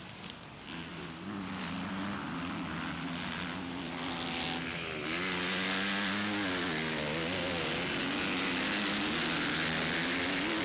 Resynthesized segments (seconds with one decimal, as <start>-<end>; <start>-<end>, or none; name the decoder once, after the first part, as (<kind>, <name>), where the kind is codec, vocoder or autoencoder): none